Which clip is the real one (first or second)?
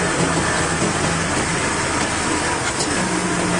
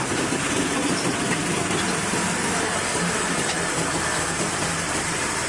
first